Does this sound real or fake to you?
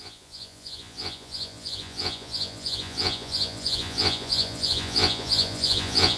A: fake